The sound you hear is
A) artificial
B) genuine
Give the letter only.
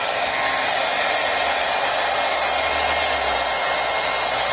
B